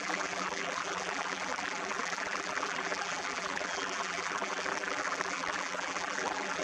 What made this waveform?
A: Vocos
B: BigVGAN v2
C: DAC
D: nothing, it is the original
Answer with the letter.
B